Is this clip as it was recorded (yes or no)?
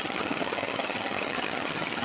no